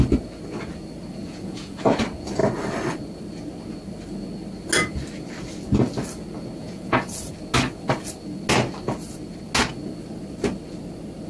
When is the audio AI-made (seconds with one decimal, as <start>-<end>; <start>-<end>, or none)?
1.2-2.0; 6.6-7.3